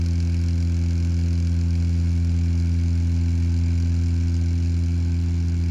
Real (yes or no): yes